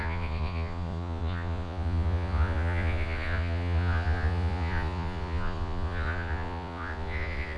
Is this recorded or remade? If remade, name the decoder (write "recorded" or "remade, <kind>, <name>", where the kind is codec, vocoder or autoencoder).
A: remade, vocoder, Vocos